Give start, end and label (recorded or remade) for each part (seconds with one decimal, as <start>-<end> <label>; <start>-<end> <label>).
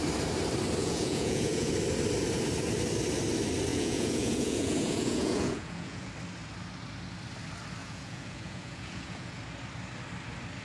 0.0-0.8 recorded; 0.8-1.7 remade; 1.7-3.7 recorded; 3.7-6.1 remade; 6.1-7.8 recorded; 7.8-9.4 remade; 9.4-10.6 recorded